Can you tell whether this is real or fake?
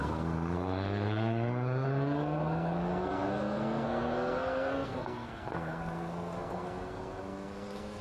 fake